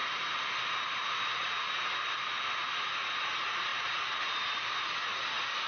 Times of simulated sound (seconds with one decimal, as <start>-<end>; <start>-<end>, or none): 3.2-5.0